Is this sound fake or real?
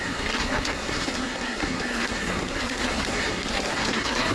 fake